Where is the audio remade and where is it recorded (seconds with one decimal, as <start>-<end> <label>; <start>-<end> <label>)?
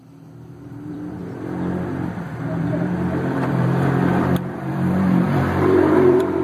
0.0-1.2 remade; 1.2-1.8 recorded; 1.8-6.4 remade